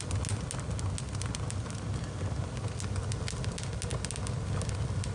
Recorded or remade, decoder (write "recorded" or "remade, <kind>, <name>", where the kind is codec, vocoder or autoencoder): recorded